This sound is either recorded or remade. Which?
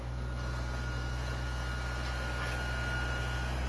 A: recorded